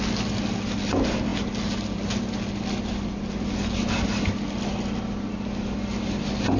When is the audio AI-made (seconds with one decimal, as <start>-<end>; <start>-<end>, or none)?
none

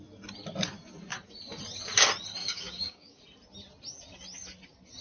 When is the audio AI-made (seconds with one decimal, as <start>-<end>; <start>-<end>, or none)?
2.4-3.2

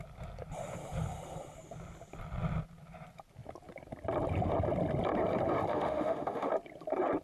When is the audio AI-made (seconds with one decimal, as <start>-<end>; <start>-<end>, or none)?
5.7-6.5

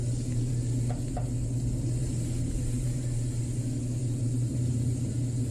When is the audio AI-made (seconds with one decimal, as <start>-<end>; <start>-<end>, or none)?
0.0-0.5; 2.0-3.4; 4.0-5.1

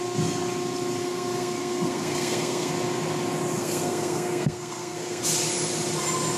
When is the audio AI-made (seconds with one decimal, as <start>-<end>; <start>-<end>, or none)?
1.0-2.7; 3.6-5.2